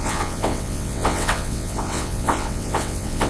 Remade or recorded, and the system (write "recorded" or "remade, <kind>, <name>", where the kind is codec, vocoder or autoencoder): remade, vocoder, WaveNeXt